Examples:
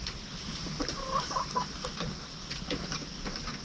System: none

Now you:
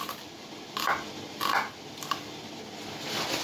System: none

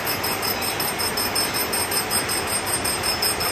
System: none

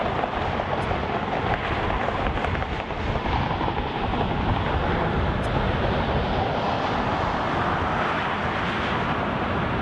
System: none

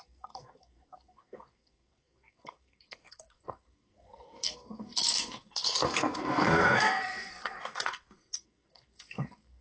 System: codec, SNAC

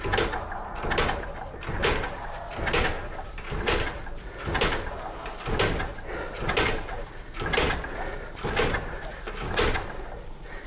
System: none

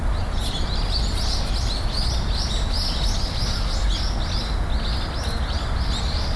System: none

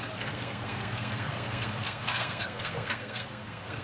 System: codec, SNAC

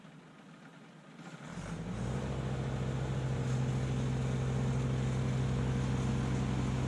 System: none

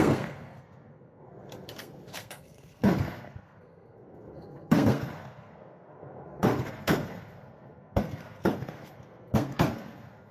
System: codec, SNAC